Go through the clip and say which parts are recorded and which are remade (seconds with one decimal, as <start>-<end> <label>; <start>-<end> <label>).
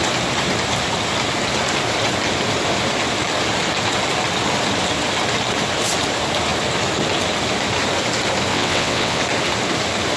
0.0-8.5 recorded; 8.5-9.2 remade; 9.2-10.2 recorded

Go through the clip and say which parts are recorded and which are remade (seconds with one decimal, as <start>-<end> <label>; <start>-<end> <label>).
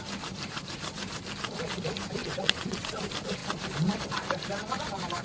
0.0-2.2 recorded; 2.2-2.8 remade; 2.8-5.2 recorded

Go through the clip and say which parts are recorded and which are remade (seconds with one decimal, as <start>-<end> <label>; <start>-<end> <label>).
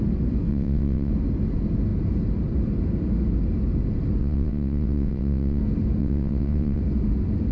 0.0-0.5 recorded; 0.5-1.1 remade; 1.1-4.2 recorded; 4.2-5.6 remade; 5.6-6.0 recorded; 6.0-6.8 remade; 6.8-7.5 recorded